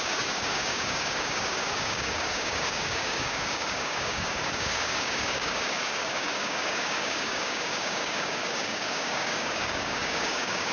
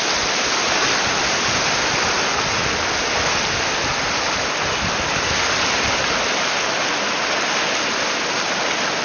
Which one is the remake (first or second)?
first